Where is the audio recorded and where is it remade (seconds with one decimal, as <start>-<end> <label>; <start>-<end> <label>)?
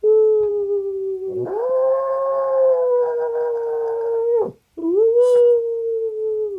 0.0-6.6 recorded